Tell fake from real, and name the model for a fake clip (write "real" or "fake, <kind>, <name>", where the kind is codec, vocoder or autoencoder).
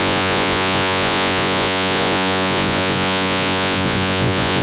fake, vocoder, Vocos